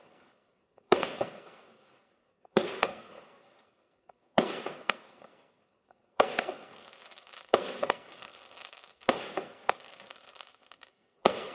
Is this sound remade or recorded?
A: remade